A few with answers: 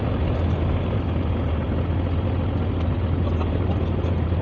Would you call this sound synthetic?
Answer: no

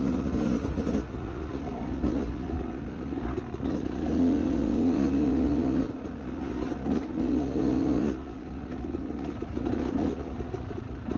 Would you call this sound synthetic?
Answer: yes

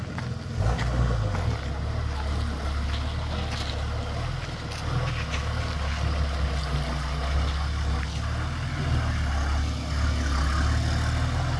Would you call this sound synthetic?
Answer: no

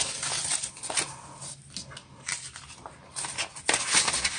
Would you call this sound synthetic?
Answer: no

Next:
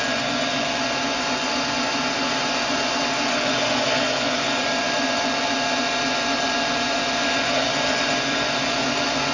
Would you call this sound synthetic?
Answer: yes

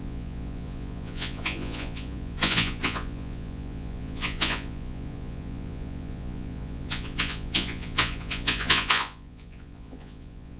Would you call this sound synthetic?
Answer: yes